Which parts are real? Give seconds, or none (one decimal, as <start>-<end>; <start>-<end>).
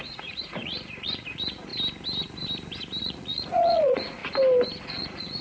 1.7-3.0; 4.2-4.8